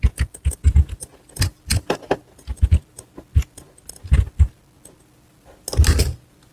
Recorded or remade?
recorded